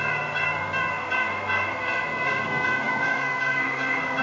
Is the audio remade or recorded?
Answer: remade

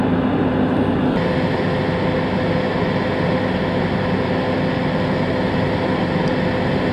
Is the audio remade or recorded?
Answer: recorded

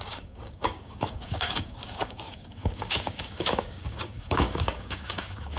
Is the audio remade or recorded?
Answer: remade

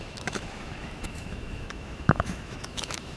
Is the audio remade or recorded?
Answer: remade